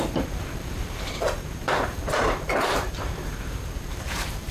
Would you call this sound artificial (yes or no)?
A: yes